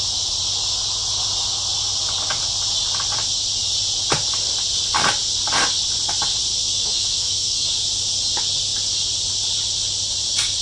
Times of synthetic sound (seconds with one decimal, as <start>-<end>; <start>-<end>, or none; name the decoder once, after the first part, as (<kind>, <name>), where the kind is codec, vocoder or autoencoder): 6.6-7.7 (autoencoder, DAC-VAE)